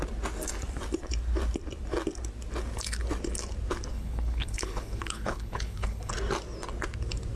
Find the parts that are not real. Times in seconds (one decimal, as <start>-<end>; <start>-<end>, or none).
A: 3.9-6.1